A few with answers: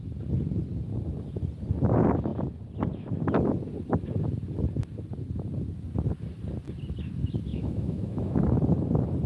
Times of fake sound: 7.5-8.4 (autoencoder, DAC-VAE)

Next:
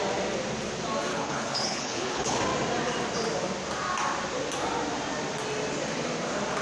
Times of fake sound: 1.1-2.4 (codec, HILCodec)

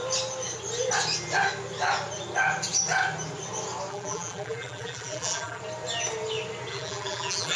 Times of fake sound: 3.9-5.6 (vocoder, BigVGAN v2); 6.7-7.6

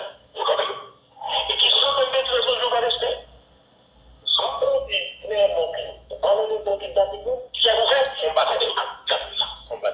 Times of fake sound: 0.0-0.8 (autoencoder, DAC-VAE); 4.4-6.7; 8.7-9.9

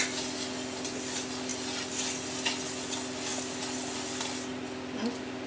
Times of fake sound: none

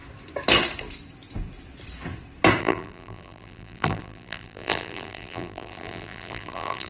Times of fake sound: 2.6-6.9 (vocoder, BigVGAN v2)

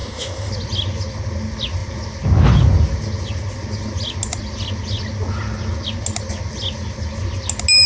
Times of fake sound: 0.0-0.5 (autoencoder, DAC-VAE)

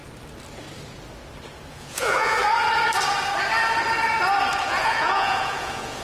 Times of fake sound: 1.7-2.4 (vocoder, Vocos); 4.6-6.0